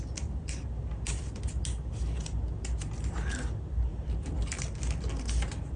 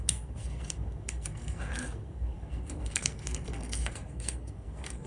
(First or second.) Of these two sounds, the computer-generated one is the second